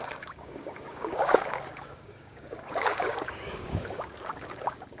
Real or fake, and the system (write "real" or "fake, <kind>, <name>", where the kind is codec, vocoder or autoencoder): fake, codec, DAC